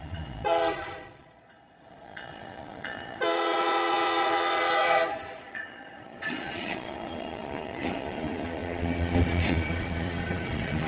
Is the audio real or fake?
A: fake